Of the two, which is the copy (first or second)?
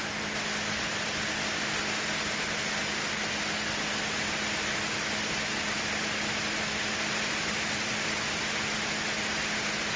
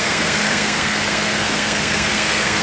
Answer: second